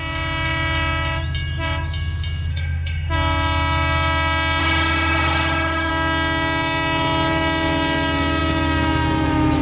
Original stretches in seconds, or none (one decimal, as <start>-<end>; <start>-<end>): 0.0-2.5; 3.1-4.6; 5.9-9.6